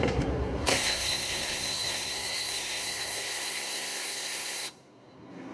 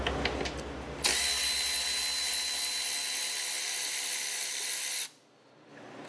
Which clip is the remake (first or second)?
first